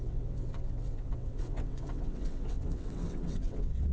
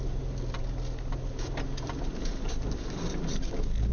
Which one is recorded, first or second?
second